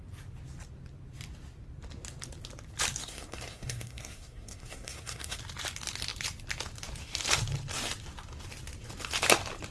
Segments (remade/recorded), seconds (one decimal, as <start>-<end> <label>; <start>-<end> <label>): 0.0-3.0 recorded; 3.0-5.4 remade; 5.4-9.7 recorded

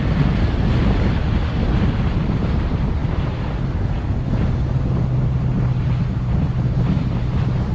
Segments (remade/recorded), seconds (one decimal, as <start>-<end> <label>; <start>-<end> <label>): 0.0-7.7 recorded